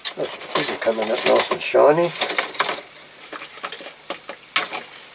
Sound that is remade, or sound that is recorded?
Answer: recorded